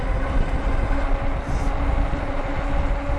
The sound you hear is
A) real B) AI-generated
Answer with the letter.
A